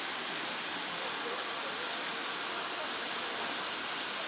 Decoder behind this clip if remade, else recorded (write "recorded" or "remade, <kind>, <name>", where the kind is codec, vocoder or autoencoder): recorded